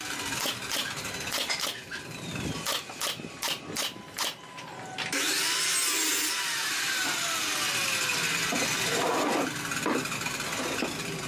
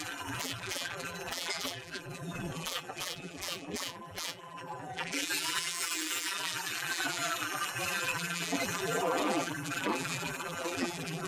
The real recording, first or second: first